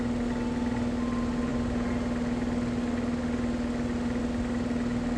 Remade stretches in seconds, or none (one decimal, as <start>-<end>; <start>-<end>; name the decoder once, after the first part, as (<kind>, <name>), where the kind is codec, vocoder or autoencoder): none